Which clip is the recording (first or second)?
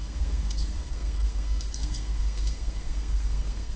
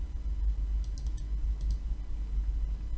second